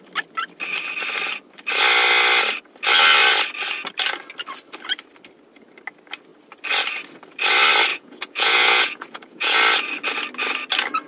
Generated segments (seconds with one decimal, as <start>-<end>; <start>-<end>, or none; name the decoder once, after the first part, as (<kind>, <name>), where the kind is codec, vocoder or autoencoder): 7.9-9.6 (vocoder, Vocos)